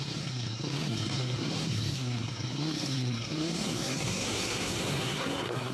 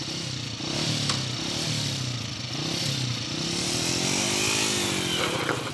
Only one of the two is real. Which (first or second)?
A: second